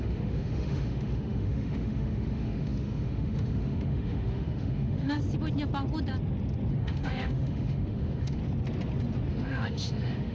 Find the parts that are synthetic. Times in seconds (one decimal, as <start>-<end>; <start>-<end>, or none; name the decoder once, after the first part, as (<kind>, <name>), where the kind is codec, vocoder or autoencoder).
0.0-5.2 (autoencoder, DAC-VAE); 6.7-8.4; 9.3-10.3